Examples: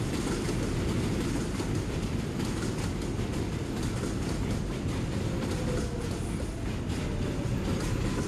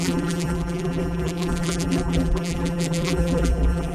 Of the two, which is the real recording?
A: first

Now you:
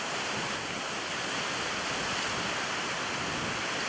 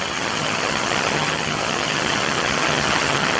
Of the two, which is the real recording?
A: first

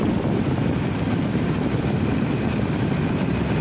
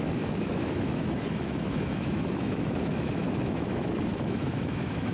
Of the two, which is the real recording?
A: first